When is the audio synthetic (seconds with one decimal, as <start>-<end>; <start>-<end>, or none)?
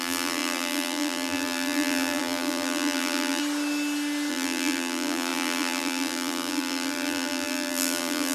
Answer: 0.0-3.4; 4.3-8.3